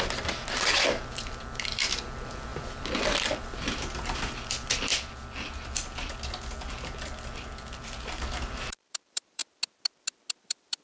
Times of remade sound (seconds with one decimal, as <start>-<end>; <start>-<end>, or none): 0.0-4.9; 8.2-9.4; 10.4-10.8